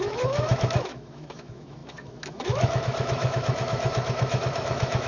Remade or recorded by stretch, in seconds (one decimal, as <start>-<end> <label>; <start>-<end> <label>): 0.0-5.1 remade